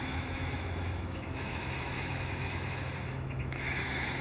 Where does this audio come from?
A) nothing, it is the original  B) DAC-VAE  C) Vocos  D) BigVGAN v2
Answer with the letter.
B